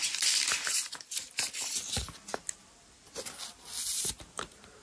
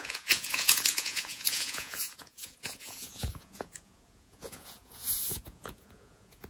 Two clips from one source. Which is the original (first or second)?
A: first